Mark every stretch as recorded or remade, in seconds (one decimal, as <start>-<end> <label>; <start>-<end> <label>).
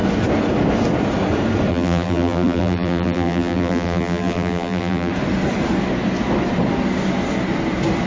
0.0-1.7 recorded; 1.7-5.1 remade; 5.1-8.1 recorded